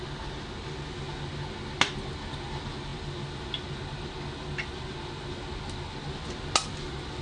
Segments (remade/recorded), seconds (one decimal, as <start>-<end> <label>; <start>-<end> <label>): 0.0-7.2 recorded